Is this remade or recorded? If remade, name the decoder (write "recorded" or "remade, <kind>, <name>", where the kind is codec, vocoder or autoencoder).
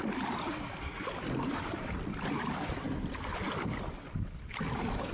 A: remade, vocoder, BigVGAN v2